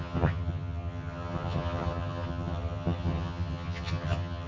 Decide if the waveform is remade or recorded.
remade